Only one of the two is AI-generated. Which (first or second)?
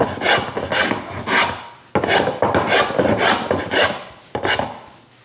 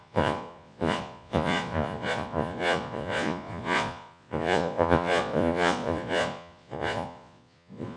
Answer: second